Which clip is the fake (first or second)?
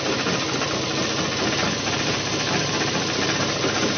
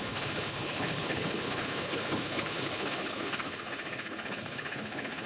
second